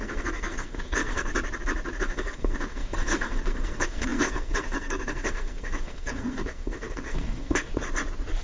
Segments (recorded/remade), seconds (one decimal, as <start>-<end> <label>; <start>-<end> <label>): 0.0-1.3 remade; 1.3-2.0 recorded; 2.0-7.7 remade; 7.7-8.4 recorded